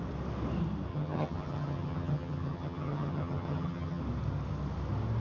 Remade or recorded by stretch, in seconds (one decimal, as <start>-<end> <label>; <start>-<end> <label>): 0.0-0.9 recorded; 0.9-4.0 remade; 4.0-5.2 recorded